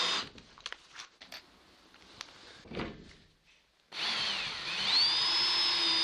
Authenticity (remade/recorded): recorded